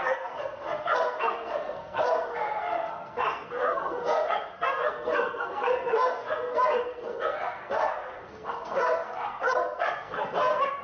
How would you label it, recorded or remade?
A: remade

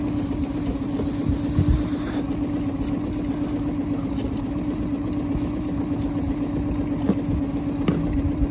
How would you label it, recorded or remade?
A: recorded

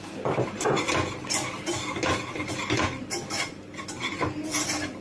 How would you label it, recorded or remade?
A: recorded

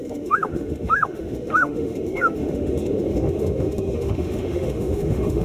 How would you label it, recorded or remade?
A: remade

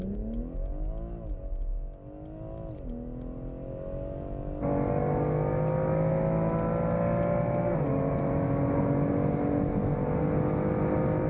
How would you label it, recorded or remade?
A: recorded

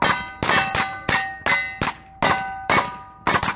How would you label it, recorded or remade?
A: recorded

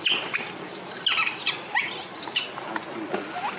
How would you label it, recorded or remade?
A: recorded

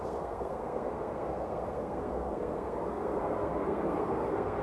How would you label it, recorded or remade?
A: remade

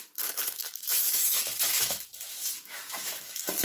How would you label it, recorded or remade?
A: remade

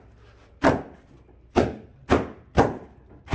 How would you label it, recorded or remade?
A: recorded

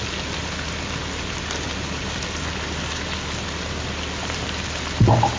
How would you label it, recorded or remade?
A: recorded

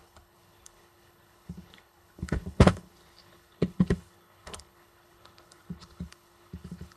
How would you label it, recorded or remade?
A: remade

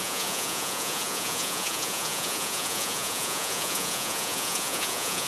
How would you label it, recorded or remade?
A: remade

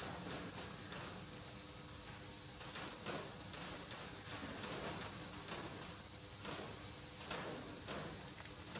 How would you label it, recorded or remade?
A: recorded